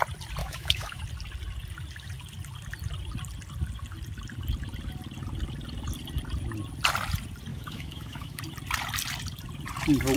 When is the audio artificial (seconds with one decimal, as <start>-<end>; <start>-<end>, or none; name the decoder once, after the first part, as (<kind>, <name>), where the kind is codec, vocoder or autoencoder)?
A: 0.4-1.0 (autoencoder, DAC-VAE); 7.5-8.4

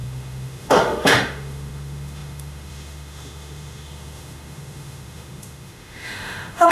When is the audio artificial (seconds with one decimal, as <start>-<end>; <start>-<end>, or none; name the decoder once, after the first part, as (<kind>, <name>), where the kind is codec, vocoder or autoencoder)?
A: 0.0-6.7 (autoencoder, DAC-VAE)

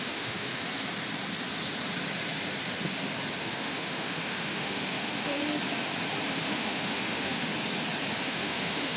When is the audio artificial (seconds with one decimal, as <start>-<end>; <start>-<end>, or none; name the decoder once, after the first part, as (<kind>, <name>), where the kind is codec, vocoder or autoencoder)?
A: 0.0-0.6 (autoencoder, DAC-VAE); 3.4-5.4; 6.3-7.5; 8.2-9.0